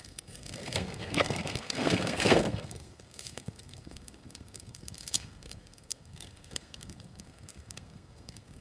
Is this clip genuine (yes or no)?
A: no